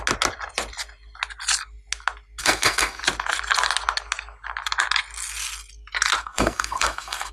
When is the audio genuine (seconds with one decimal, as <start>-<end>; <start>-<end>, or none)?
0.0-2.4; 3.0-6.2

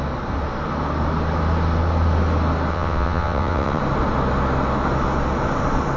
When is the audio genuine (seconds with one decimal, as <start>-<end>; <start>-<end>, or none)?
0.0-2.7; 3.8-6.0

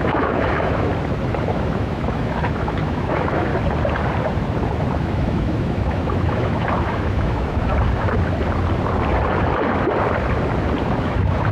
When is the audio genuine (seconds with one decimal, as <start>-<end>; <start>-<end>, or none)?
0.9-1.4; 3.5-5.0; 7.7-10.8

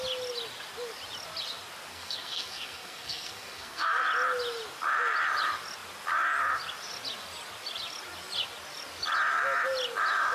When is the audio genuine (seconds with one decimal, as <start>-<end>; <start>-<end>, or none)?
0.0-1.9; 4.0-10.3

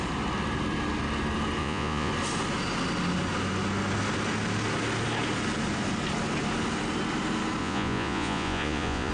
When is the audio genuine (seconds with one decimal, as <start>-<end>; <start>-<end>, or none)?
0.0-1.6; 2.1-7.6

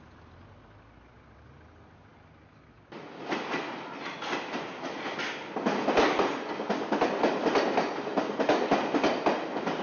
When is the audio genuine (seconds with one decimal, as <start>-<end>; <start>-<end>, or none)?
0.0-9.8